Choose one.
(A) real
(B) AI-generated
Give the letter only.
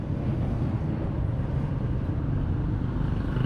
A